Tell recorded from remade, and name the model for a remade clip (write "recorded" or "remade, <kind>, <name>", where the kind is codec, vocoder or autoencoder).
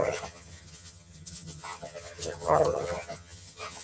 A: remade, vocoder, HiFi-GAN